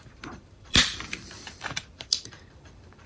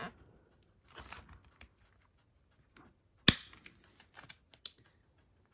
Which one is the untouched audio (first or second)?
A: second